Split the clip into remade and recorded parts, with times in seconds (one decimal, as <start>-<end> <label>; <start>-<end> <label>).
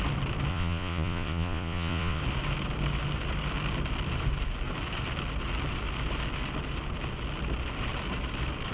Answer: 0.0-0.5 recorded; 0.5-2.2 remade; 2.2-8.7 recorded